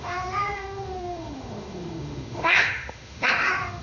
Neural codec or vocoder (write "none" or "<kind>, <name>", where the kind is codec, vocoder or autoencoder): autoencoder, DAC-VAE